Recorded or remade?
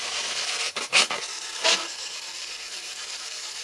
remade